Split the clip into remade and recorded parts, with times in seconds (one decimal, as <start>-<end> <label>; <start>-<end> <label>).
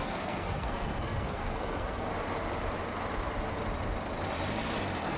0.0-2.1 remade; 2.1-5.2 recorded